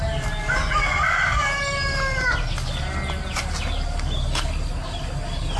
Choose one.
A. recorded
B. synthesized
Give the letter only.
A